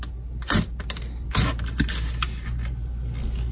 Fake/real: real